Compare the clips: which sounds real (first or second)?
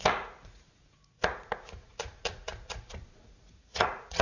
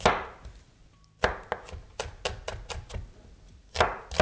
second